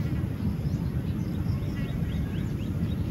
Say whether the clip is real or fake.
real